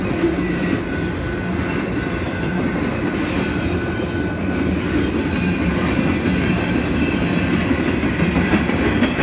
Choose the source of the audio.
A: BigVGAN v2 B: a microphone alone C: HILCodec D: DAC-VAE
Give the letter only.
B